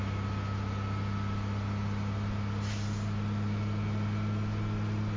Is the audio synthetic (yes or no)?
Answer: no